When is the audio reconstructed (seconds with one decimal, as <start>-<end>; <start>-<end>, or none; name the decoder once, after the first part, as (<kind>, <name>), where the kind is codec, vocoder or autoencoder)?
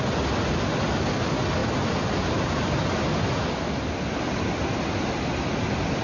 none